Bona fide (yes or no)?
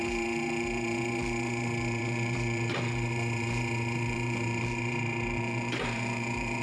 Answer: no